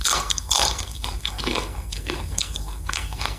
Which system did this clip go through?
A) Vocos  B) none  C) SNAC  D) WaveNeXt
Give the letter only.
C